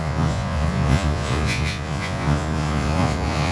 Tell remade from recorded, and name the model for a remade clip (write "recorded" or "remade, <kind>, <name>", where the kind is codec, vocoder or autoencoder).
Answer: remade, vocoder, Vocos